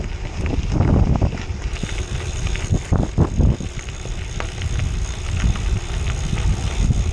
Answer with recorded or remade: recorded